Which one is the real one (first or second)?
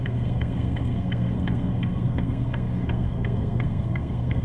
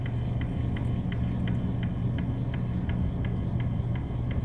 second